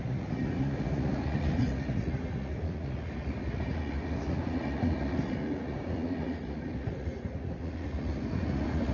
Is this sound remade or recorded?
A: remade